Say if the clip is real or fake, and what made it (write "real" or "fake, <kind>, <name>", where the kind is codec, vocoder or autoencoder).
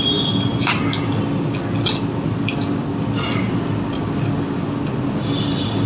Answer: real